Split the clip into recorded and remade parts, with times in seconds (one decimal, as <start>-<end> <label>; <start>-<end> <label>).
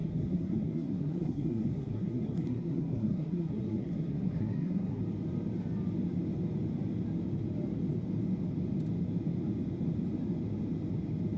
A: 0.0-5.0 remade; 5.0-11.4 recorded